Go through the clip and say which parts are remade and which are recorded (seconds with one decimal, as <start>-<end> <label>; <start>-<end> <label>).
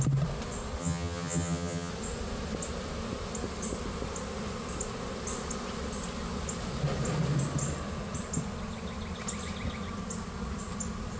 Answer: 0.0-0.8 recorded; 0.8-1.9 remade; 1.9-11.2 recorded